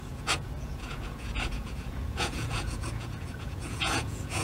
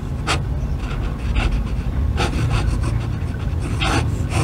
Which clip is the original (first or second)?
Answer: second